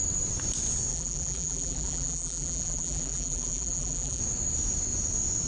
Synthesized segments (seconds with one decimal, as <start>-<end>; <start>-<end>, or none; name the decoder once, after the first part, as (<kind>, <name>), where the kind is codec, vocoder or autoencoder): 0.9-4.2 (vocoder, BigVGAN v2)